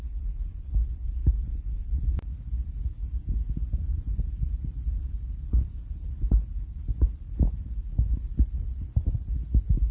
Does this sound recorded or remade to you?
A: recorded